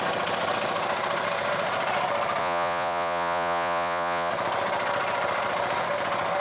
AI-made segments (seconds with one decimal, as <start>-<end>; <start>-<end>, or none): 2.4-4.3